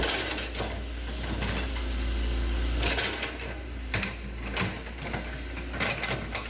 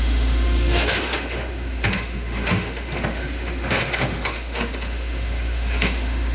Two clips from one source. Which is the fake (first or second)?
second